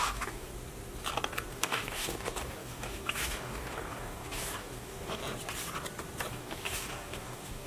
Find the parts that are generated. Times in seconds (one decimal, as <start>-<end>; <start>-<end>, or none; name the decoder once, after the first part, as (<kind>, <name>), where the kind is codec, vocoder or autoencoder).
0.0-0.5 (codec, DAC); 1.5-5.2; 6.3-7.7